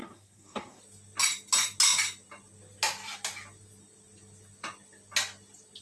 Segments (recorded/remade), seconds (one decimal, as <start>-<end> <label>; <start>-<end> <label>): 0.0-0.8 remade; 0.8-5.8 recorded